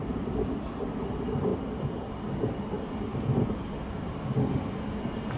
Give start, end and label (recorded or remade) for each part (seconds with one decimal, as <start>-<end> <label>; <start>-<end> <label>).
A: 0.0-5.4 recorded